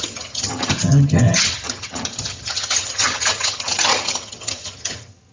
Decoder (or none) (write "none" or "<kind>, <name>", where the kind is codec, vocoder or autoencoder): vocoder, HiFi-GAN